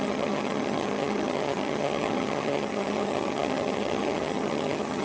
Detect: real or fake fake